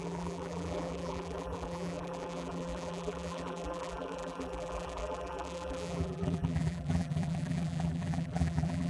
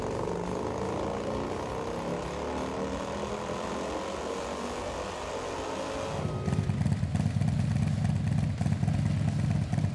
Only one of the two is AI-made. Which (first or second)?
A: first